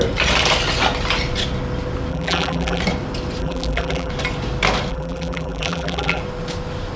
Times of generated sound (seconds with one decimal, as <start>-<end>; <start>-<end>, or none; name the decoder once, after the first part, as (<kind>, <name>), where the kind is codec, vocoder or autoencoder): 2.1-2.8 (vocoder, BigVGAN v2); 3.4-4.1; 4.9-6.2